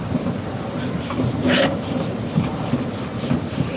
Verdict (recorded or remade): recorded